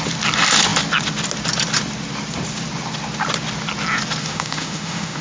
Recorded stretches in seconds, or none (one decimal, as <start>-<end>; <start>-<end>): 0.0-4.2